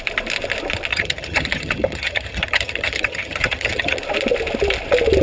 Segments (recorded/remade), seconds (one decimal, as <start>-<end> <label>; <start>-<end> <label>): 0.0-0.9 recorded; 0.9-4.0 remade; 4.0-5.2 recorded